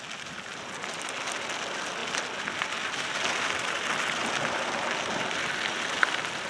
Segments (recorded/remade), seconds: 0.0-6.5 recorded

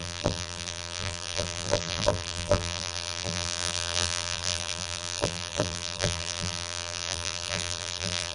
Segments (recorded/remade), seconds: 0.0-8.3 remade

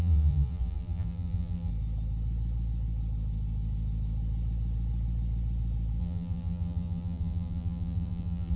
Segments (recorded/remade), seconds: 0.0-1.7 remade; 1.7-6.0 recorded; 6.0-8.6 remade

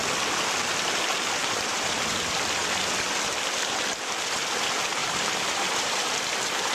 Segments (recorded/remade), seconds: 0.0-1.4 recorded; 1.4-2.3 remade; 2.3-5.0 recorded; 5.0-6.2 remade; 6.2-6.7 recorded